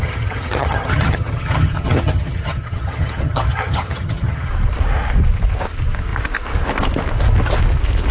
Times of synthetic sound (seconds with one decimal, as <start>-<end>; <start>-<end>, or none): 0.0-4.5